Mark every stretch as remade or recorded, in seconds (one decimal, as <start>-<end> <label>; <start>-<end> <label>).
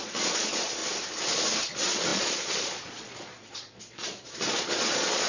0.0-0.8 remade; 0.8-1.6 recorded; 1.6-5.3 remade